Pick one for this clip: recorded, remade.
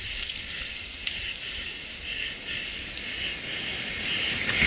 recorded